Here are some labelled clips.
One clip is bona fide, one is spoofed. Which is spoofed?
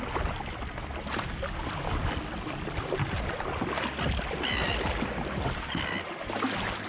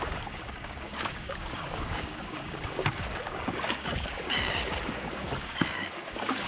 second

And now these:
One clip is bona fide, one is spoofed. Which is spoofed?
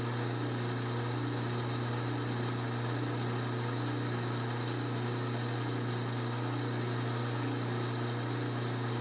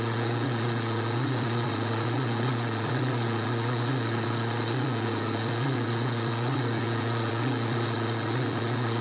second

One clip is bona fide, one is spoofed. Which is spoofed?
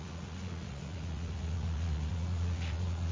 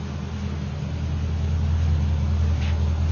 first